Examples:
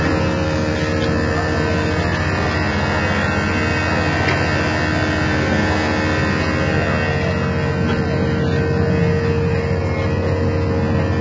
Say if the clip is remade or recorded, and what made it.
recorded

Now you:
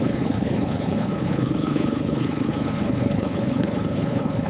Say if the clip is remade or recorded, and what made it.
remade, codec, HILCodec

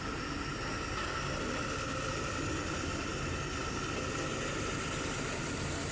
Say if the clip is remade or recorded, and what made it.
recorded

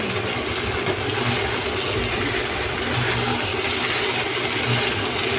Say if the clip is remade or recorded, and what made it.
recorded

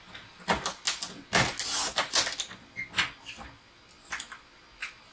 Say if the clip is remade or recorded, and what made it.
recorded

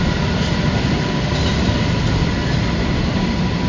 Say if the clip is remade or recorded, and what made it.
recorded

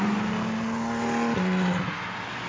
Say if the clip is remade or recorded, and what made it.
recorded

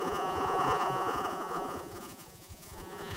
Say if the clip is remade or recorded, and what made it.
remade, vocoder, Vocos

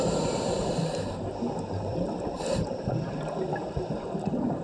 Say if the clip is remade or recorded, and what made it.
remade, vocoder, BigVGAN v2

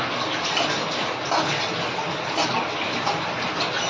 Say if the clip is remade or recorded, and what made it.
recorded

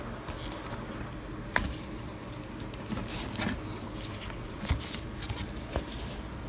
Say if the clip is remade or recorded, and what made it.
recorded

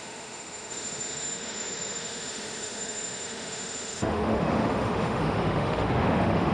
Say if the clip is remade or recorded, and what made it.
remade, autoencoder, DAC-VAE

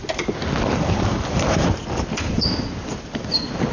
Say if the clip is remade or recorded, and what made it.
recorded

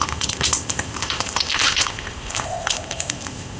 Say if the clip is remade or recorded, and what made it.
remade, codec, ZipCodec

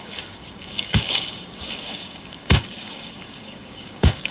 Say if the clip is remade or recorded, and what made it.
remade, codec, DAC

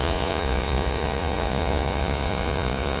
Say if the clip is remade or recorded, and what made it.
remade, vocoder, Vocos